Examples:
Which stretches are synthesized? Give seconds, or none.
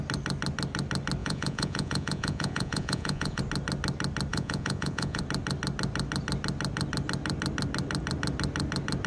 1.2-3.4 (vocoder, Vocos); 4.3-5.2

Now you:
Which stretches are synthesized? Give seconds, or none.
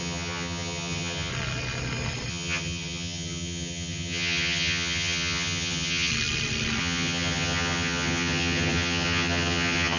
0.0-1.3 (vocoder, HiFi-GAN); 2.3-6.1; 6.8-10.0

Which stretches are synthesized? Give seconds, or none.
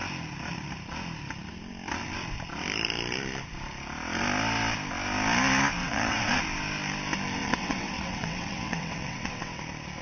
5.8-6.4 (vocoder, WaveNeXt); 7.4-9.6